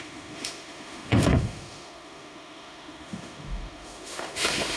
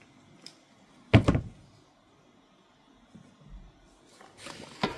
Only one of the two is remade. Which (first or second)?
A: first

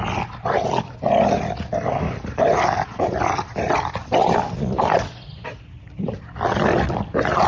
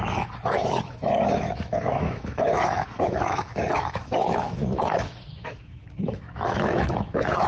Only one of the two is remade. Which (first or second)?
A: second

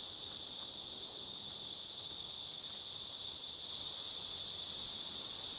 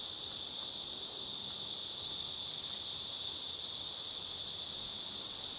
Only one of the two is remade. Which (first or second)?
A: first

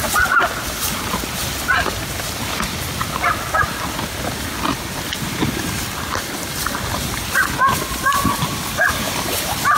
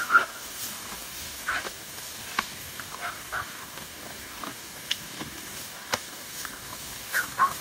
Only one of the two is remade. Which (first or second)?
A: second